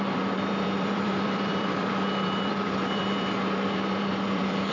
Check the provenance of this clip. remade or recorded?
remade